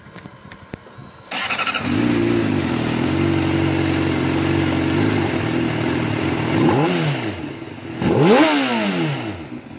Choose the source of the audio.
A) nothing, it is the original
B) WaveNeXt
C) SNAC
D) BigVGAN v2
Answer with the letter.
A